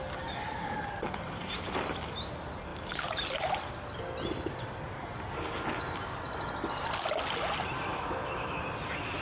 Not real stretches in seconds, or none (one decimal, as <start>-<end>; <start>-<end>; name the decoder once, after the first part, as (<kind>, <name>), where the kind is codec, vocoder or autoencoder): 7.9-8.6 (autoencoder, DAC-VAE)